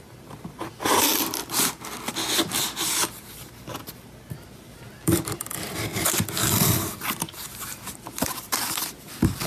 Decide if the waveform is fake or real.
fake